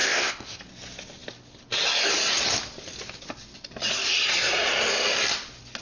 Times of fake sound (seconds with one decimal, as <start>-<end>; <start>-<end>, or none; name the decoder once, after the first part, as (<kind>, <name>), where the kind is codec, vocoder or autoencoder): 0.0-0.6 (codec, ZipCodec)